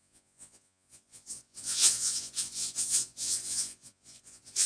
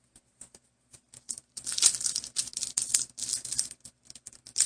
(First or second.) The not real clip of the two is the first